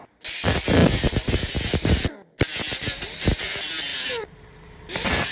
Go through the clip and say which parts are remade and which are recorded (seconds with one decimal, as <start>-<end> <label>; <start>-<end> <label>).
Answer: 0.0-0.8 recorded; 0.8-2.1 remade; 2.1-3.9 recorded; 3.9-5.3 remade